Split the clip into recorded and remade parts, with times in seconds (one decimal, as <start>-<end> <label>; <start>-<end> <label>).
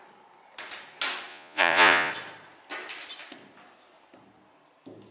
0.0-1.3 recorded; 1.3-2.1 remade; 2.1-5.1 recorded